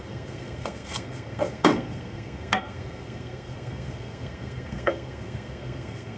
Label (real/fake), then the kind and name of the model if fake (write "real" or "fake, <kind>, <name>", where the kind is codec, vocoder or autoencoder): fake, codec, SNAC